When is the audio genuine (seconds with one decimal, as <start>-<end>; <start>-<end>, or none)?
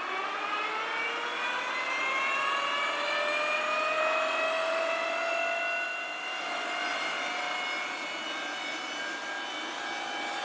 0.0-10.4